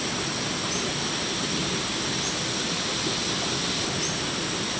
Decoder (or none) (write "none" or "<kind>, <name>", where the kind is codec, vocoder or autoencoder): none